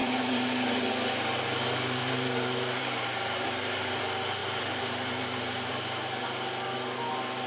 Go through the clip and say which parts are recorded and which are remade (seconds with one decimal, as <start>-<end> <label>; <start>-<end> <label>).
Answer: 0.0-0.9 remade; 0.9-2.0 recorded; 2.0-4.0 remade; 4.0-4.4 recorded; 4.4-5.7 remade; 5.7-7.5 recorded